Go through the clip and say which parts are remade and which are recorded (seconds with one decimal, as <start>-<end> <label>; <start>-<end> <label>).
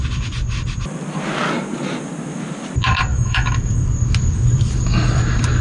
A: 0.0-3.1 recorded; 3.1-3.7 remade; 3.7-5.6 recorded